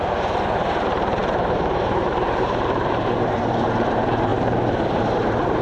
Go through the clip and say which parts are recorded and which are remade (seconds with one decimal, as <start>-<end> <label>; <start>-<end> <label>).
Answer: 0.0-5.6 remade

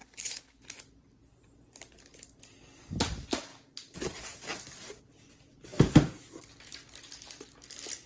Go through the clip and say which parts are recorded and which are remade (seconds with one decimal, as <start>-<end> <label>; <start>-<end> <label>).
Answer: 0.0-0.6 remade; 0.6-8.1 recorded

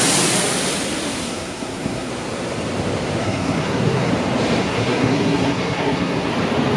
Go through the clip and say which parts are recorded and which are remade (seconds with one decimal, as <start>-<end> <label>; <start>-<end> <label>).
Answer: 0.0-1.2 recorded; 1.2-2.1 remade; 2.1-3.2 recorded; 3.2-4.1 remade; 4.1-4.6 recorded; 4.6-6.3 remade; 6.3-6.8 recorded

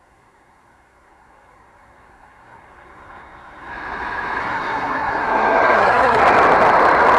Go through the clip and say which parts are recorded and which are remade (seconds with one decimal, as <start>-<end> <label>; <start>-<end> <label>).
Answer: 0.0-3.7 remade; 3.7-4.4 recorded; 4.4-6.2 remade; 6.2-7.2 recorded

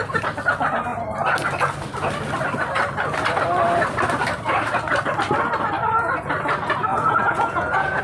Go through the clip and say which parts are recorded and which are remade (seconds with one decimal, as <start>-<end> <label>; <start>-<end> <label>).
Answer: 0.0-6.9 recorded; 6.9-8.0 remade

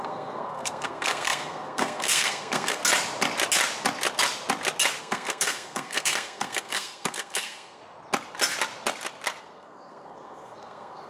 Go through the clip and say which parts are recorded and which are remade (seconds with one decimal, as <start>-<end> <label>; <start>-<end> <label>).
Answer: 0.0-2.8 remade; 2.8-5.0 recorded; 5.0-7.8 remade; 7.8-9.4 recorded; 9.4-11.1 remade